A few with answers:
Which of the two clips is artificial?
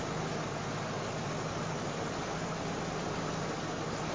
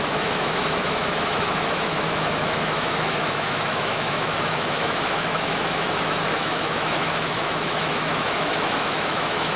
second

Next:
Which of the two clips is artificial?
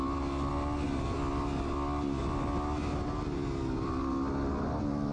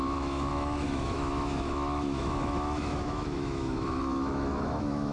second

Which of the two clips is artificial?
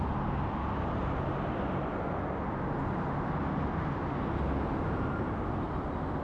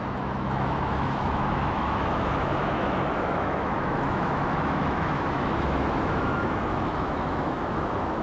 second